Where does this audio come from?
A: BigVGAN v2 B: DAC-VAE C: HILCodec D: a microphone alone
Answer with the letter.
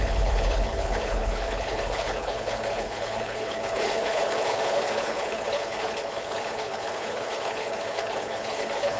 C